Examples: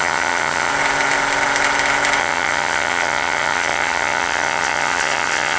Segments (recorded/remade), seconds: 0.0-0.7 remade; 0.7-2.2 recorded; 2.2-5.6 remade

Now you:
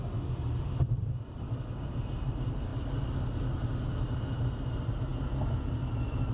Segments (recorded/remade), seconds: 0.0-6.3 recorded